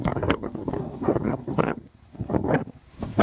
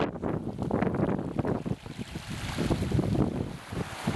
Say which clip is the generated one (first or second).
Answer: first